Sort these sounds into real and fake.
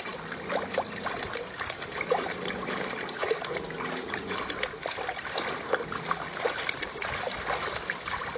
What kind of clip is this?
real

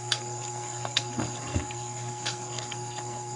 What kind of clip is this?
fake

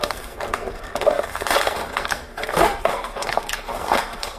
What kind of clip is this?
fake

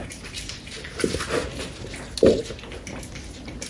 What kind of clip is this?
real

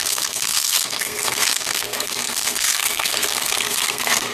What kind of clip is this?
fake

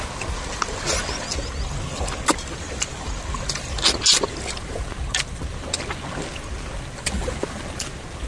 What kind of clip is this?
real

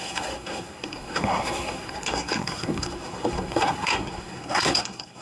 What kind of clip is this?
fake